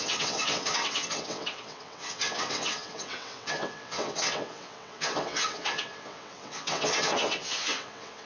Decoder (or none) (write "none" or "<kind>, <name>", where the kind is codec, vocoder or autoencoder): vocoder, WaveNeXt